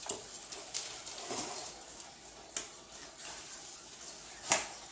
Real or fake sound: real